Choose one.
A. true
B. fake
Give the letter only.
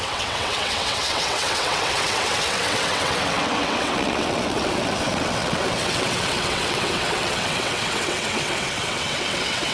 B